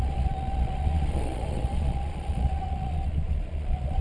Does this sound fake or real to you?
fake